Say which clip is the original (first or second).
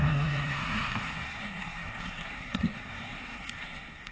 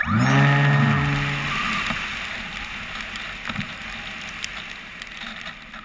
second